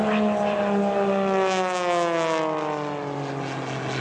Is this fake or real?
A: real